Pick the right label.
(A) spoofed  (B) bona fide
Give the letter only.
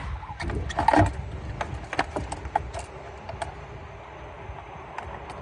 B